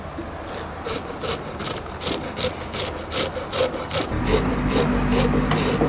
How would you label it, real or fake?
real